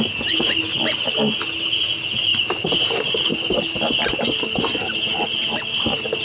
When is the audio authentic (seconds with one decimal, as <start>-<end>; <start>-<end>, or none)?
0.0-6.2